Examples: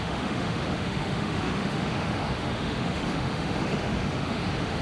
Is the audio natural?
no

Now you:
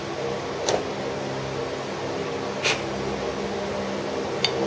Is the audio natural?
yes